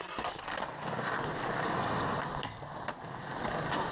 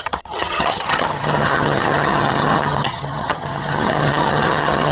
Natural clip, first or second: first